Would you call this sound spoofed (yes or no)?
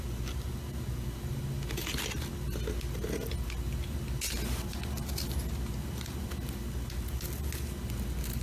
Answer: no